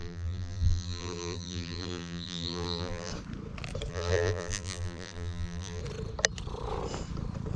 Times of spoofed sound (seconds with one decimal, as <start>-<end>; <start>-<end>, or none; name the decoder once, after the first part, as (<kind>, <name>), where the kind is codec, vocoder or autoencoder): 0.0-3.1 (vocoder, BigVGAN v2); 3.9-5.8